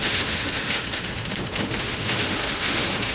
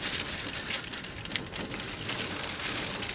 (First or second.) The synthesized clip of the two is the first